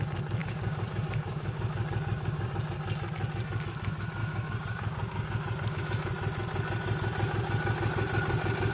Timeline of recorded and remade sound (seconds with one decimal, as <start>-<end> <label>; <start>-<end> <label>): 0.0-0.4 recorded; 0.4-2.5 remade; 2.5-4.2 recorded; 4.2-5.8 remade; 5.8-8.7 recorded